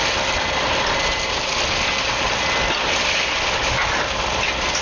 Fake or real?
real